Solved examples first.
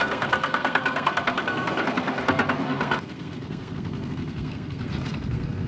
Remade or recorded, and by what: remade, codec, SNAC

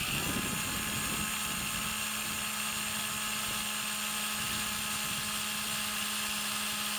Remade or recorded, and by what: recorded